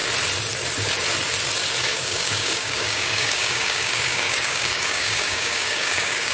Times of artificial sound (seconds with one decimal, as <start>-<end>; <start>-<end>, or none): 1.8-6.3